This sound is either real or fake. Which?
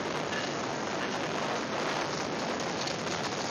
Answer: real